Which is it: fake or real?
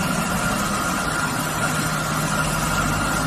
real